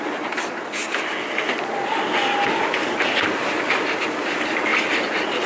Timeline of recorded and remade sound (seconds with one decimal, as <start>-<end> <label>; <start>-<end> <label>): 0.0-0.8 remade; 0.8-3.7 recorded; 3.7-4.7 remade; 4.7-5.5 recorded